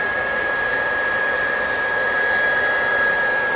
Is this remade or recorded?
recorded